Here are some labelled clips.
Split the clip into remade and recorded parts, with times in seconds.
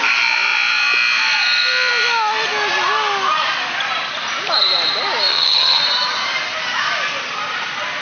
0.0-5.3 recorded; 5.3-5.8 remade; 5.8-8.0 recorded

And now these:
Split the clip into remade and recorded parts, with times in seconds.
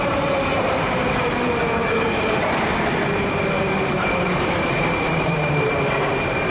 0.0-6.5 remade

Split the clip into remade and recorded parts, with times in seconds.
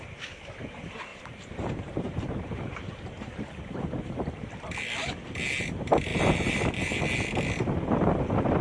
0.0-1.1 recorded; 1.1-4.2 remade; 4.2-6.1 recorded; 6.1-7.0 remade; 7.0-8.6 recorded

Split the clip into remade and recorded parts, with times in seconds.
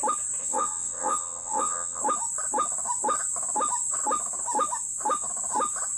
0.0-0.4 recorded; 0.4-2.0 remade; 2.0-6.0 recorded